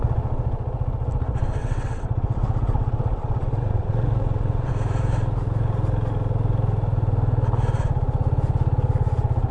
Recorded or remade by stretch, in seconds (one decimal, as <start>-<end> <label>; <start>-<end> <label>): 0.0-1.6 recorded; 1.6-4.7 remade; 4.7-9.5 recorded